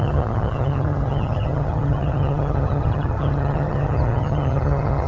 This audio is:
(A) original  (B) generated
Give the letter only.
B